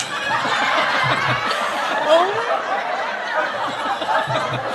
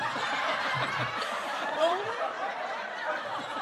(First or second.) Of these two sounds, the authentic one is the first